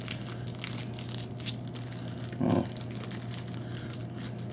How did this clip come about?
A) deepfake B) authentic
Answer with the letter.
B